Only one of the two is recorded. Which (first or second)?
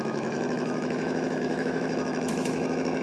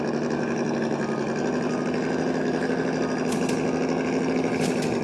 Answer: second